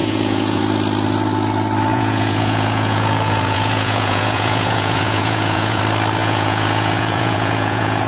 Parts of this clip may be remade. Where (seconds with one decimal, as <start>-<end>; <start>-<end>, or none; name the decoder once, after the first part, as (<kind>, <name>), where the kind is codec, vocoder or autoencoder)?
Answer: 0.0-0.6 (vocoder, Vocos); 1.9-5.8; 6.2-8.1